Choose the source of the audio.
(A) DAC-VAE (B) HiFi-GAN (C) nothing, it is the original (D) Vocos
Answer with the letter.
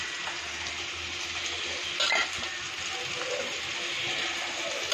C